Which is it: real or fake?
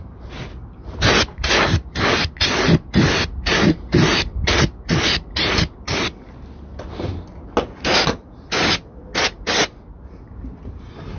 real